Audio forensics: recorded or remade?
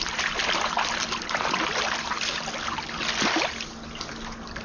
recorded